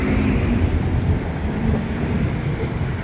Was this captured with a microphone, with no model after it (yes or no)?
no